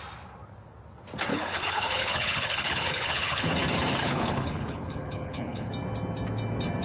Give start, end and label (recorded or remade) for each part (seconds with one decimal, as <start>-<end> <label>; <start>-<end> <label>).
0.0-1.3 recorded; 1.3-3.5 remade; 3.5-4.0 recorded; 4.0-5.7 remade; 5.7-6.8 recorded